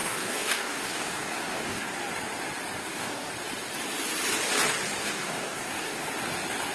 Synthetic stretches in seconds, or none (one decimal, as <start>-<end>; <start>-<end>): 0.0-2.0; 2.8-3.3; 5.0-6.1